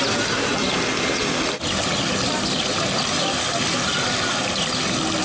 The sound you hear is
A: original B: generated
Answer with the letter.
A